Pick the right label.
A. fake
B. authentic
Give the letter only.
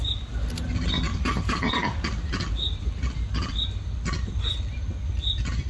B